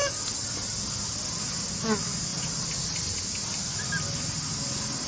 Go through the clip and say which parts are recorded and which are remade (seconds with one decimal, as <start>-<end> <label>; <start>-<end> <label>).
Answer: 0.0-5.1 recorded